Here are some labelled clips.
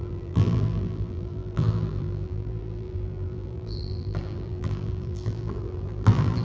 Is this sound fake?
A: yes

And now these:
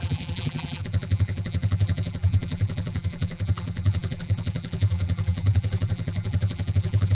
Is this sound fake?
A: yes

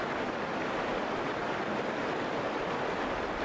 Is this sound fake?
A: no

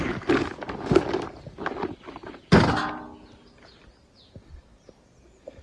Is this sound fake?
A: no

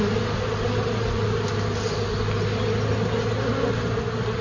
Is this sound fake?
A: no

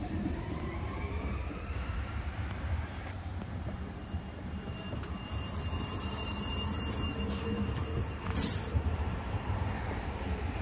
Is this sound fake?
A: yes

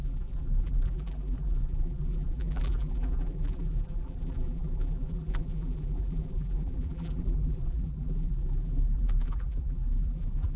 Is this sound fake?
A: yes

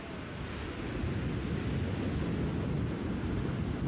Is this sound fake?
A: no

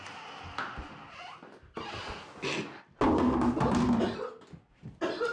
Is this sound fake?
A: no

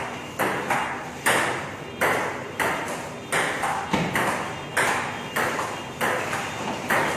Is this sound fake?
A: no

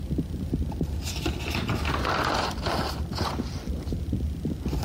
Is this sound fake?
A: no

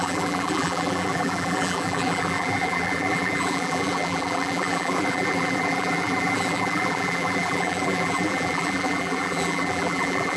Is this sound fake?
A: yes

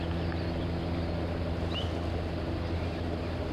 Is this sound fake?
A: no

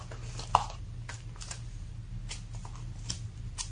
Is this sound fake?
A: yes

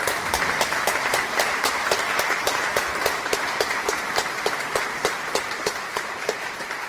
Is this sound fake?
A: yes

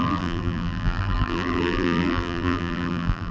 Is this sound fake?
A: yes